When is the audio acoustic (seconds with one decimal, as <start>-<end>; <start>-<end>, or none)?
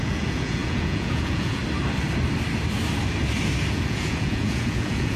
1.6-3.7